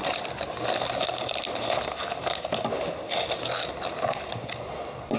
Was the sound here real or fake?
real